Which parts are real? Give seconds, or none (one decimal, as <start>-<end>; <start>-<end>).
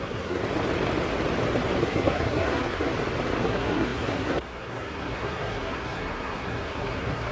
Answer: 0.4-1.8; 2.9-3.4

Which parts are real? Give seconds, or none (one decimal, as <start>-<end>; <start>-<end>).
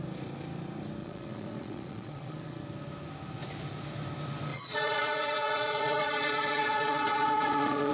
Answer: 0.0-1.0; 2.6-4.5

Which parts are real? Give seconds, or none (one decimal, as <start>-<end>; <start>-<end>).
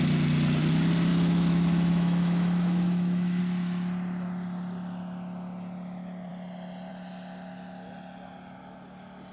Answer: 0.0-1.1; 3.4-9.3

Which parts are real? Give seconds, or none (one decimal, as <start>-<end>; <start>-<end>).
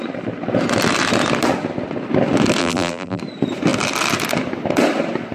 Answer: 0.0-2.6; 3.2-5.3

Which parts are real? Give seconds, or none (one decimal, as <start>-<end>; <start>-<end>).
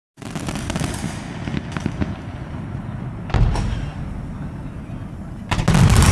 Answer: 0.0-1.8; 3.1-6.1